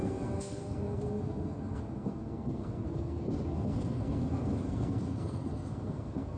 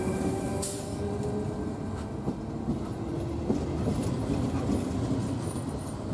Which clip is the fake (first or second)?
first